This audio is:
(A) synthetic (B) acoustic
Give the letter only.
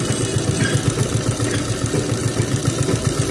B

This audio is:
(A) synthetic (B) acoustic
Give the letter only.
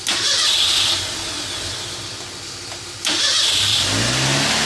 B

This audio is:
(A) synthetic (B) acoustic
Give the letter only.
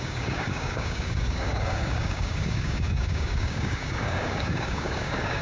A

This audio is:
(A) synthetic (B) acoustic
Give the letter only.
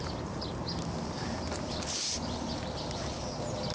B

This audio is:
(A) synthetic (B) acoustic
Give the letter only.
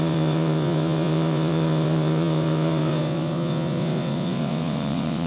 A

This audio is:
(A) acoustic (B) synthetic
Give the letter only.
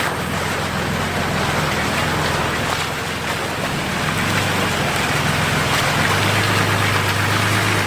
A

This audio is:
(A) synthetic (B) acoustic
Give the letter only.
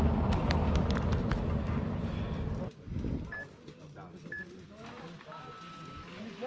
B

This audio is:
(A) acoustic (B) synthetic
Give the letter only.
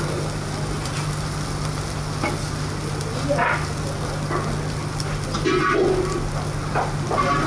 A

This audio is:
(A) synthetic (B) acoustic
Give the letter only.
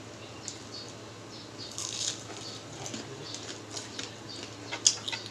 B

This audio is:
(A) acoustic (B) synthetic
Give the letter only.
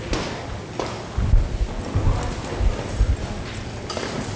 A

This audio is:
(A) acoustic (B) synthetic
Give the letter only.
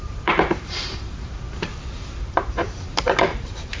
B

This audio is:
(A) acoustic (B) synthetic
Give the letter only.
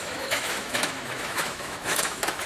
B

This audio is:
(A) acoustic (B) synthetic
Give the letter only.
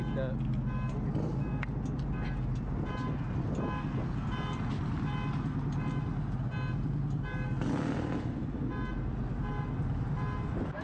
A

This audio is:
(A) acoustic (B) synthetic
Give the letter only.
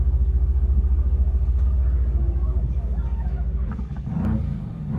B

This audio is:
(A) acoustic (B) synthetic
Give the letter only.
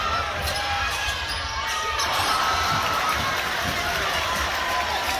A